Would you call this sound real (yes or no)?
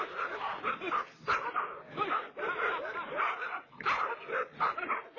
yes